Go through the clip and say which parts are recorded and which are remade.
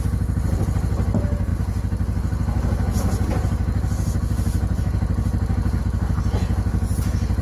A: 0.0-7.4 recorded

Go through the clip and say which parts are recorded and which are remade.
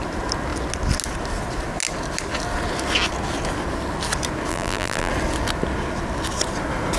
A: 0.0-4.5 recorded; 4.5-5.1 remade; 5.1-7.0 recorded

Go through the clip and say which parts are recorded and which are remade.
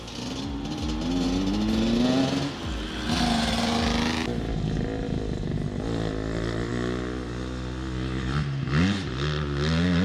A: 0.0-10.0 recorded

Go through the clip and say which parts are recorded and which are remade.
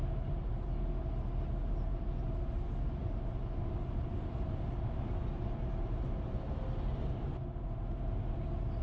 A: 0.0-3.0 recorded; 3.0-5.3 remade; 5.3-8.8 recorded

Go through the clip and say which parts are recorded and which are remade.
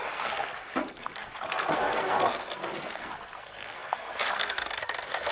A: 0.0-5.3 remade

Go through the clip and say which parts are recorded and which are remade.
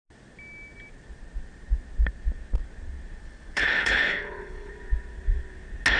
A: 0.0-3.2 recorded; 3.2-4.7 remade; 4.7-6.0 recorded